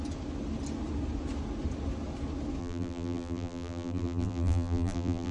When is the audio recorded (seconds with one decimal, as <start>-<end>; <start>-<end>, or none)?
0.0-2.6